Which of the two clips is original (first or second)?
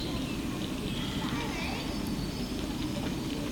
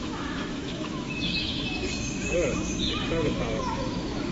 first